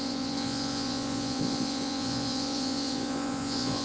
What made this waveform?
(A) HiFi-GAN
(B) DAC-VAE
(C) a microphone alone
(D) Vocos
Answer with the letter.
D